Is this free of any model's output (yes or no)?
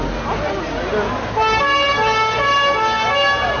yes